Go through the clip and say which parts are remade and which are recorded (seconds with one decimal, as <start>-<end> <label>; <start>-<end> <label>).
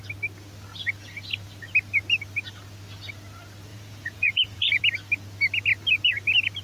0.0-3.7 recorded; 3.7-4.8 remade; 4.8-6.6 recorded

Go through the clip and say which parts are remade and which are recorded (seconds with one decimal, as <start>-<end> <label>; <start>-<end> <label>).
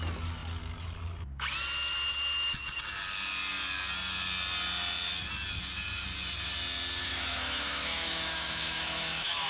0.0-7.0 recorded; 7.0-9.5 remade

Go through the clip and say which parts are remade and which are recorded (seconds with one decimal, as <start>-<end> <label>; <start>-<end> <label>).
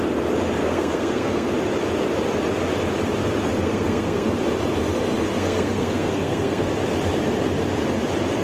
0.0-0.6 recorded; 0.6-1.5 remade; 1.5-3.5 recorded; 3.5-4.4 remade; 4.4-5.3 recorded; 5.3-6.7 remade; 6.7-8.4 recorded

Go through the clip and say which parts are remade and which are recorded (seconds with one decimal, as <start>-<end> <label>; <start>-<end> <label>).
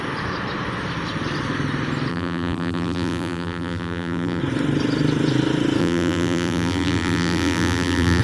0.0-2.1 recorded; 2.1-4.4 remade; 4.4-5.8 recorded; 5.8-8.2 remade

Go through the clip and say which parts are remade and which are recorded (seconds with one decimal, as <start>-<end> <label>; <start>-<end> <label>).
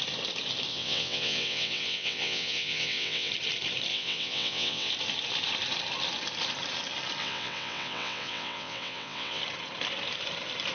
0.0-0.7 recorded; 0.7-3.3 remade; 3.3-3.9 recorded; 3.9-4.9 remade; 4.9-7.2 recorded; 7.2-9.4 remade; 9.4-10.7 recorded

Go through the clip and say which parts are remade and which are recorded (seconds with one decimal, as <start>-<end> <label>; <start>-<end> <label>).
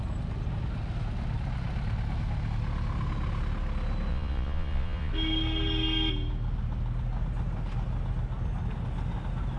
0.0-4.1 recorded; 4.1-5.1 remade; 5.1-9.6 recorded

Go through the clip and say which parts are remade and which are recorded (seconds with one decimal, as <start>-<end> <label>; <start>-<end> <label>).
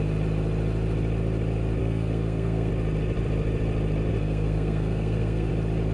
0.0-1.8 recorded; 1.8-2.7 remade; 2.7-4.1 recorded; 4.1-5.5 remade; 5.5-5.9 recorded